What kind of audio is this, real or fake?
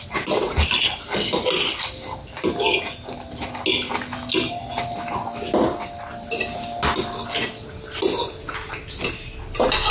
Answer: real